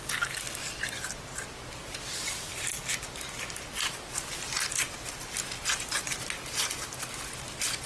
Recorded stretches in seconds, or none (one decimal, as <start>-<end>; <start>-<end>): 0.0-1.8; 2.6-7.9